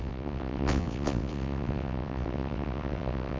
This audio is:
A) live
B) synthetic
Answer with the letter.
B